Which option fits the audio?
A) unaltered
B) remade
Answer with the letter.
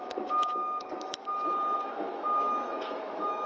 B